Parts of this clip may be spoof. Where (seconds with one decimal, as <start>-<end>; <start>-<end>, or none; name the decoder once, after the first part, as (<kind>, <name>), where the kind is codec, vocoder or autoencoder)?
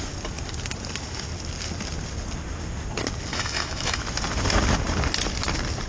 3.3-4.0 (autoencoder, DAC-VAE)